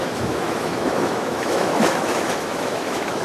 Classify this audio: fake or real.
fake